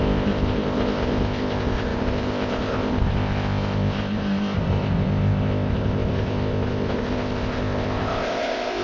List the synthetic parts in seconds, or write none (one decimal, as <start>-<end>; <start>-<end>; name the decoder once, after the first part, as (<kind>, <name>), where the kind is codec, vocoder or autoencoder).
0.0-8.8 (codec, ZipCodec)